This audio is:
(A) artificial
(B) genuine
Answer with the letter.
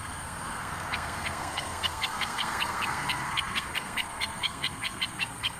A